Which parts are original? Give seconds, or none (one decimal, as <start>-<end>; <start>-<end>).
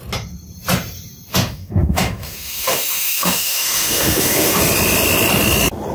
0.0-1.3; 4.6-5.9